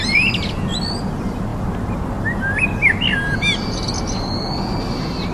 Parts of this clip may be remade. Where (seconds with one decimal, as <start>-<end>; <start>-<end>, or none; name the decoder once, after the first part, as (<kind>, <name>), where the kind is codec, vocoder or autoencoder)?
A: none